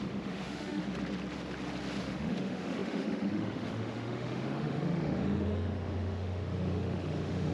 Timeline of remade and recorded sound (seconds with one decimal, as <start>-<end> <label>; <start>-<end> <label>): 0.0-0.8 remade; 0.8-2.0 recorded; 2.0-7.5 remade